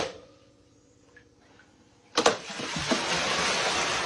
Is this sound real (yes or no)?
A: yes